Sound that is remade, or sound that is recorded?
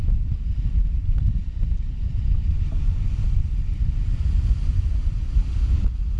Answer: recorded